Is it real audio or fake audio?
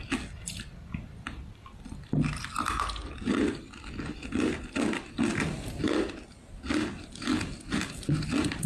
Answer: real